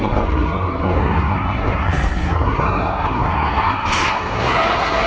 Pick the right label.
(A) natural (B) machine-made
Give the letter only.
B